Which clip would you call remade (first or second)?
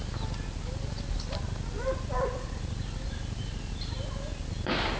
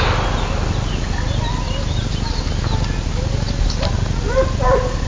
first